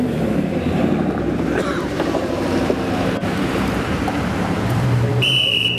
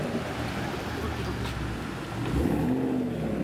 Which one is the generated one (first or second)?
first